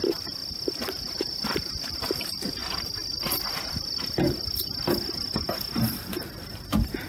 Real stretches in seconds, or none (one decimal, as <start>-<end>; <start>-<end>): 2.6-5.9